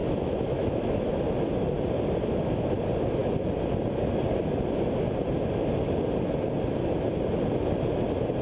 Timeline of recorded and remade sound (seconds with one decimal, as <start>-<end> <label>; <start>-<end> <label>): 0.0-1.1 remade; 1.1-8.4 recorded